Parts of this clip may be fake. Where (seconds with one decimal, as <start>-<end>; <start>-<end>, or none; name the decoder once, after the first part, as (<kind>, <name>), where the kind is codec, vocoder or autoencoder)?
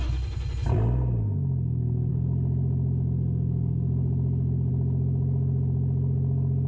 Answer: none